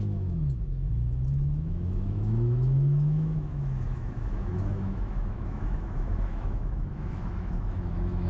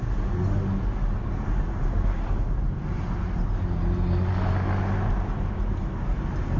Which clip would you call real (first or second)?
second